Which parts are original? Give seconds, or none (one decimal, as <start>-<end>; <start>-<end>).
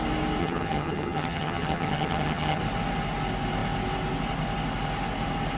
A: 0.0-0.4; 2.6-5.6